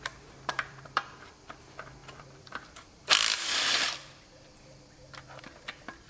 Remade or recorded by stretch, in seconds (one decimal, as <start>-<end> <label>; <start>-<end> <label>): 0.0-6.1 remade

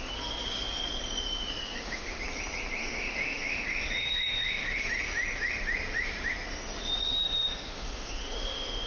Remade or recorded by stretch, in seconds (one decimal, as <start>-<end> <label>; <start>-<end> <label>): 0.0-1.6 recorded; 1.6-2.2 remade; 2.2-2.8 recorded; 2.8-4.9 remade; 4.9-7.2 recorded; 7.2-8.9 remade

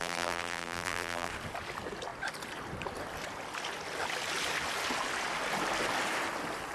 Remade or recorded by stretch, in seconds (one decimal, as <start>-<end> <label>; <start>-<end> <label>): 0.0-1.3 remade; 1.3-6.7 recorded

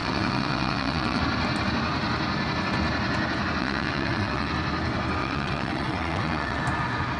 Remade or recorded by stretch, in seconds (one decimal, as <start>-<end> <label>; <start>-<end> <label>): 0.0-1.2 remade; 1.2-3.6 recorded; 3.6-4.5 remade; 4.5-5.2 recorded; 5.2-6.6 remade; 6.6-7.2 recorded

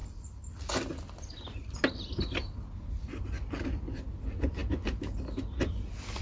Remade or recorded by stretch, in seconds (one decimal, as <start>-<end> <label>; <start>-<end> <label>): 0.0-6.2 recorded

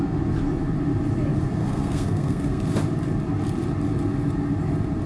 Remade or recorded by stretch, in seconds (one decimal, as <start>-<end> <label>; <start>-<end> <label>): 0.0-1.6 recorded; 1.6-2.6 remade; 2.6-5.1 recorded